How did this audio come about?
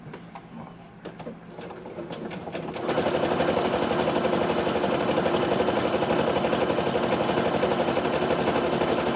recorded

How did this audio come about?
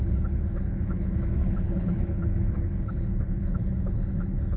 remade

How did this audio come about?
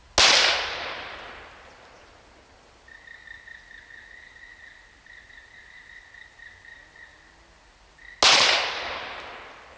recorded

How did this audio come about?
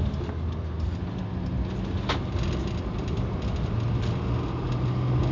recorded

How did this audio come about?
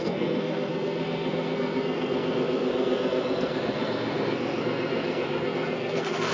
remade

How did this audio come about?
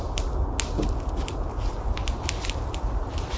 recorded